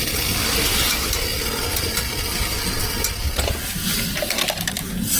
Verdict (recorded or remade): recorded